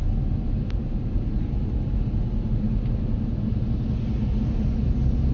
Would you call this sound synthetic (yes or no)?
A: no